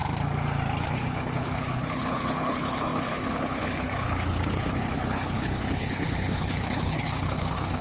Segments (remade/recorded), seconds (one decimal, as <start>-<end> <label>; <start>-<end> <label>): 0.0-0.8 recorded; 0.8-7.8 remade